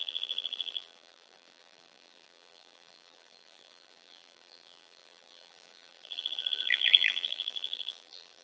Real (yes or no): no